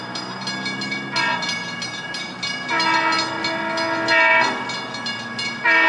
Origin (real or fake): real